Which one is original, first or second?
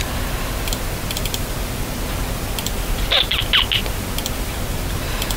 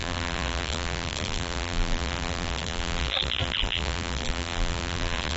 first